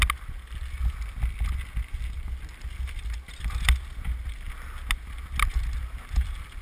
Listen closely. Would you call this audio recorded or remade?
recorded